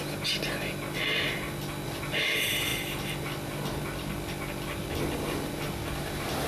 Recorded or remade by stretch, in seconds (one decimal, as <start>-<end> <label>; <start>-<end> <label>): 0.0-6.5 recorded